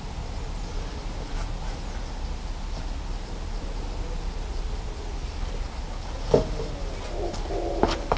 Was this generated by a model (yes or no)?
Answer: no